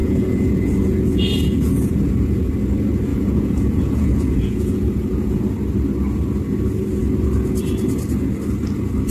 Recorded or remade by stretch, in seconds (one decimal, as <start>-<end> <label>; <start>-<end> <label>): 0.0-2.5 remade; 2.5-3.1 recorded; 3.1-5.4 remade; 5.4-9.1 recorded